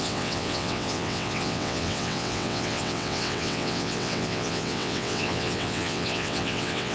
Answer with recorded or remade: remade